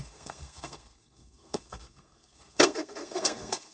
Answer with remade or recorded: remade